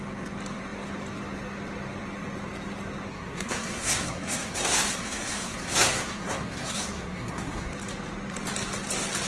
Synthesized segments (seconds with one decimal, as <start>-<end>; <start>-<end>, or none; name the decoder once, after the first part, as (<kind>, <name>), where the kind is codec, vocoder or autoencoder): 3.1-7.7 (codec, SNAC)